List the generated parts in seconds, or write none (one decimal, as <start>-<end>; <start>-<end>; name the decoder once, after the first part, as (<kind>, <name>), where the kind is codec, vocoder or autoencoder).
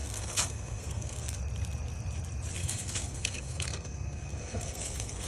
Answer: 0.0-1.4 (codec, SNAC); 2.6-5.3